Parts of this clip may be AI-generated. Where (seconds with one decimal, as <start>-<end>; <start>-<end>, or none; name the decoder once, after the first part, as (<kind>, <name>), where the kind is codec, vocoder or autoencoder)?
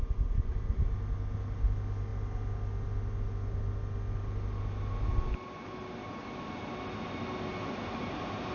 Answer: none